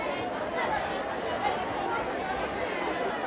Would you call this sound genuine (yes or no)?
yes